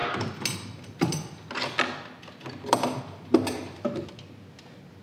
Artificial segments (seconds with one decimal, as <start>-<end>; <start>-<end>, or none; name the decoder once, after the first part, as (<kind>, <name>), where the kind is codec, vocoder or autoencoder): none